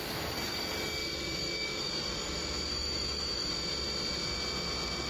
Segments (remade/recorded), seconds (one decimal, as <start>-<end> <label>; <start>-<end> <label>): 0.0-2.7 recorded; 2.7-3.5 remade; 3.5-5.1 recorded